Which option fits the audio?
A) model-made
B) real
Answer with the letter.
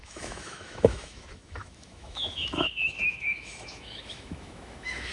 A